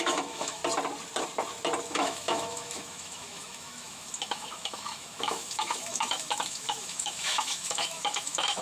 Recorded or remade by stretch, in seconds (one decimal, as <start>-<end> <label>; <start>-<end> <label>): 0.0-0.6 remade; 0.6-1.8 recorded; 1.8-8.6 remade